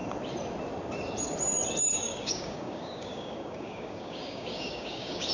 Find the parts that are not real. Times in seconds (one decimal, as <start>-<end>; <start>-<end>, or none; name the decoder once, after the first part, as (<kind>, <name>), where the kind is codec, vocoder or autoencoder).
1.9-5.3 (codec, DAC)